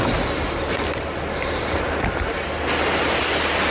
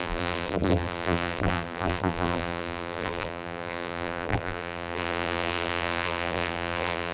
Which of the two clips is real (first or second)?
first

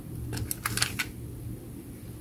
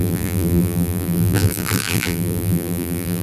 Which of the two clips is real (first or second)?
first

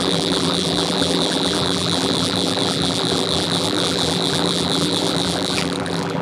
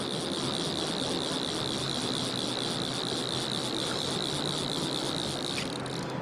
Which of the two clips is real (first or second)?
second